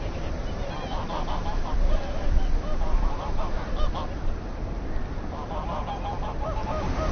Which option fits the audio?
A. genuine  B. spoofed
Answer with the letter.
A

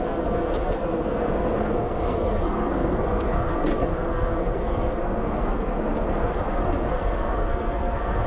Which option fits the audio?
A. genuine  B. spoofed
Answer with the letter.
B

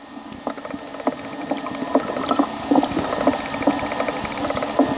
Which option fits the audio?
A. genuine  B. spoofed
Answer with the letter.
A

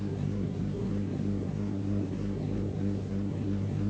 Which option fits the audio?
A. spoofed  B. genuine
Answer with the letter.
A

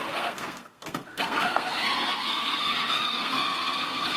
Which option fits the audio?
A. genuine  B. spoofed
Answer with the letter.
B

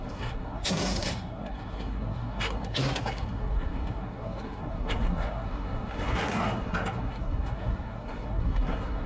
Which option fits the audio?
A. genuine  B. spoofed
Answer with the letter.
B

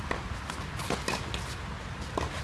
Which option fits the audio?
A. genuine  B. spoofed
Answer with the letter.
A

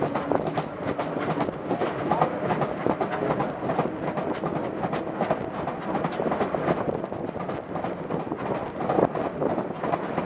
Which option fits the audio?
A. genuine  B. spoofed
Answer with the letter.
A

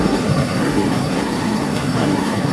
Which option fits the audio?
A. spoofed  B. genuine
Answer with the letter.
A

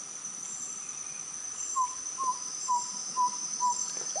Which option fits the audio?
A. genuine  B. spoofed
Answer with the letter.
A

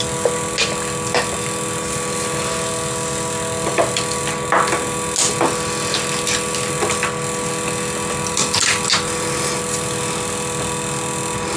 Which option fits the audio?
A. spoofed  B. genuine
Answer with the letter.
B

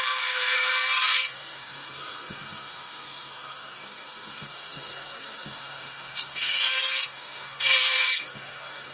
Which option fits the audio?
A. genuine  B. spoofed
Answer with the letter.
B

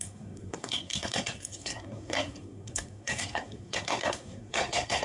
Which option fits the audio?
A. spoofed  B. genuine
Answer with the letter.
A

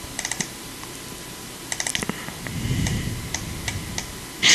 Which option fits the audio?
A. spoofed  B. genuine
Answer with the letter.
B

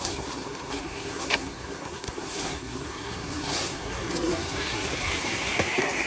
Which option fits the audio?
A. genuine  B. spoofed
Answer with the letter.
B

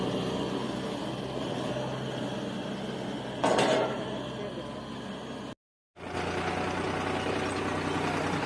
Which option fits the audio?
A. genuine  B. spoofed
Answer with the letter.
A